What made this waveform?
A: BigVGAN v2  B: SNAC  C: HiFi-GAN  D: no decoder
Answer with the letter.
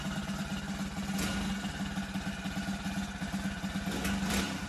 D